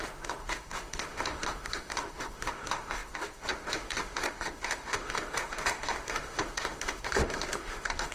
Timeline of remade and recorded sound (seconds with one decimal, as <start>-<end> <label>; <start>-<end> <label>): 0.0-8.1 remade